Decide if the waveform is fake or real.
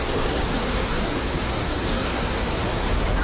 fake